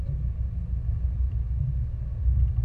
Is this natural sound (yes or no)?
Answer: yes